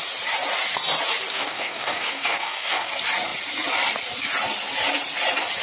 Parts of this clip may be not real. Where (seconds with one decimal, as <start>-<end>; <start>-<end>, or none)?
1.3-2.9